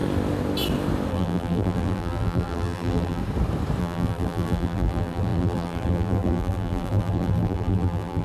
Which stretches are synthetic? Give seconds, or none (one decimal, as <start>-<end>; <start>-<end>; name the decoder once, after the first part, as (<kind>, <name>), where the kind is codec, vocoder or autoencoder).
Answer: 1.1-3.2 (vocoder, BigVGAN v2); 3.8-8.2